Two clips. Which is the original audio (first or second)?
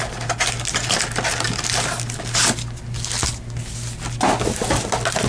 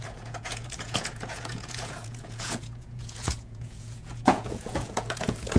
first